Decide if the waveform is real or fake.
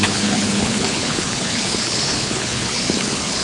fake